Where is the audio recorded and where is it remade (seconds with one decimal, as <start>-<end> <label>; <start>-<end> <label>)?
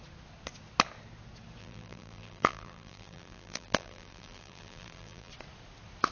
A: 0.0-1.6 recorded; 1.6-5.3 remade; 5.3-6.1 recorded